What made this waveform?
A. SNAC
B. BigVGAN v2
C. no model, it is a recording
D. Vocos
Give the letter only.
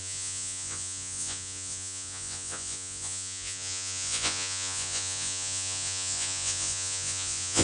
D